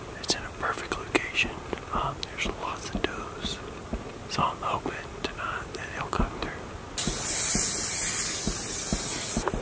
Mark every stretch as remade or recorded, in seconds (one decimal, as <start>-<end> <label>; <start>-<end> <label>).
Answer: 0.0-9.6 recorded